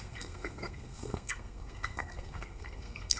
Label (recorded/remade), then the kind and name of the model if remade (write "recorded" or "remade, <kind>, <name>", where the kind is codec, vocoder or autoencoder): remade, codec, SNAC